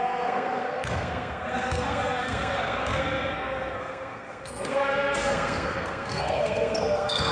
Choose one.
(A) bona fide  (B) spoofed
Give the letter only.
B